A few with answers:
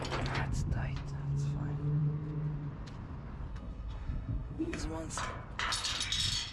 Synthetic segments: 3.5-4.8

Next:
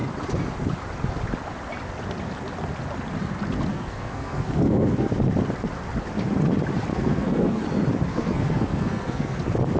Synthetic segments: 3.7-5.2; 6.9-7.6; 8.1-9.4

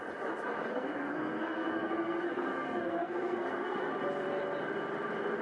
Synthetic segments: 0.7-3.9

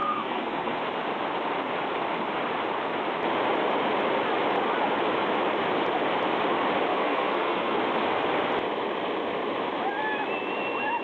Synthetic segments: 0.0-0.8; 6.9-7.8

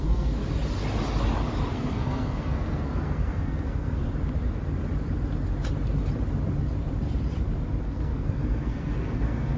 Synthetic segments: 0.0-0.4; 1.7-4.0; 7.8-9.6

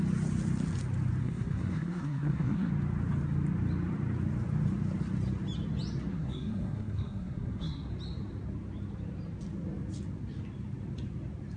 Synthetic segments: 1.2-2.7; 6.1-7.9